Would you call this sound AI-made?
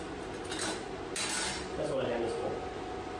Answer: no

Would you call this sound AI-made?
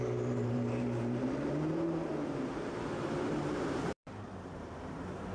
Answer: yes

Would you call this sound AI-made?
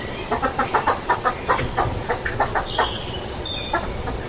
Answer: yes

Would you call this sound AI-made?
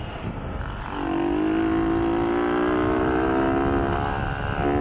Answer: no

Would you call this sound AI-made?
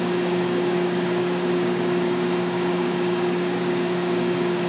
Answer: yes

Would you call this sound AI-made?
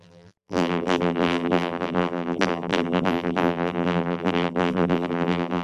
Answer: yes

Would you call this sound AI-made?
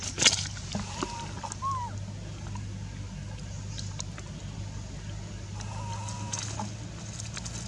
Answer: no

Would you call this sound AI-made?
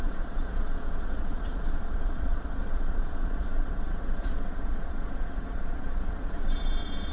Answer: yes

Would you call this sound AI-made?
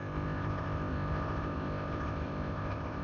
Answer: yes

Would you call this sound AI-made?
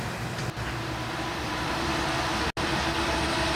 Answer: no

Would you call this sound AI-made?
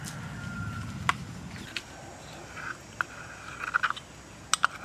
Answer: no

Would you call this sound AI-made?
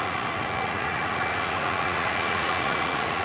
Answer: yes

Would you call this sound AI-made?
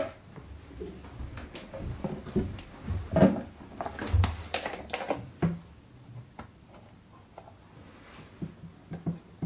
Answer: no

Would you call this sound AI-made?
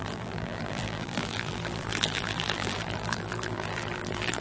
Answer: yes